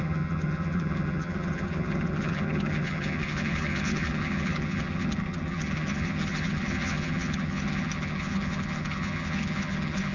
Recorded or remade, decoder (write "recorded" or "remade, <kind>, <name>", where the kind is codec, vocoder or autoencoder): remade, vocoder, HiFi-GAN